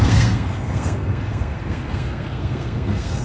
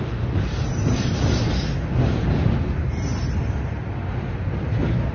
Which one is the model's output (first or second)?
first